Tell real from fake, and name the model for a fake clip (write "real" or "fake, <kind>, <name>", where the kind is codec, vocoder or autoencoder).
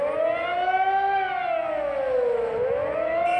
real